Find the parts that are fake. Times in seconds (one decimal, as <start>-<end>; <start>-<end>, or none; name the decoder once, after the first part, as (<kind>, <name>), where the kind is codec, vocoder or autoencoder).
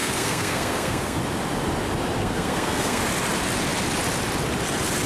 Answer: 0.0-1.2 (codec, SNAC); 2.2-3.0